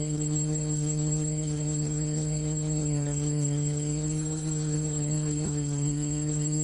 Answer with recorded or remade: remade